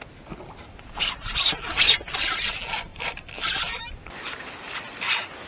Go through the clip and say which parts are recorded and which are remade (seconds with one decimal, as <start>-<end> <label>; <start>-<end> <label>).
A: 0.0-2.9 recorded; 2.9-3.8 remade; 3.8-5.5 recorded